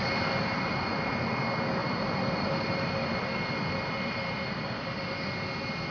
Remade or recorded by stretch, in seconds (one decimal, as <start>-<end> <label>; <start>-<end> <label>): 0.0-1.1 remade; 1.1-1.8 recorded; 1.8-5.3 remade; 5.3-5.9 recorded